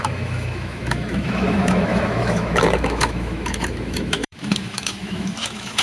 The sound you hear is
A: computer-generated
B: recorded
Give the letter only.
A